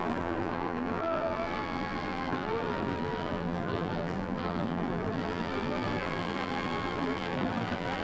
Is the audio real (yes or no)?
no